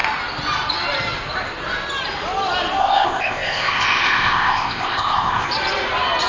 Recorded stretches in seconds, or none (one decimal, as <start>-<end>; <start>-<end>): 0.0-2.8; 5.5-6.3